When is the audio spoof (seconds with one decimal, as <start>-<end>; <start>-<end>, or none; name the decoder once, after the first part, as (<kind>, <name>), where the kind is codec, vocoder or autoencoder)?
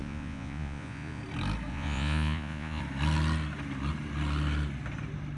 0.0-1.2 (vocoder, Vocos); 1.7-2.8